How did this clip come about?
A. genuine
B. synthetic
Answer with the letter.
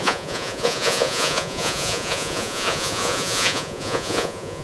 B